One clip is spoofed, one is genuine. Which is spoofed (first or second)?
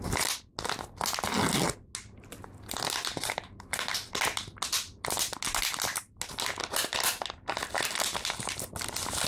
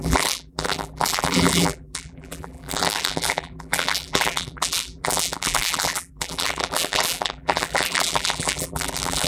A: second